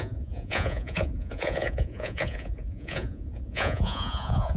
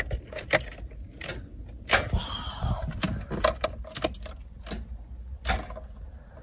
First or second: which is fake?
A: first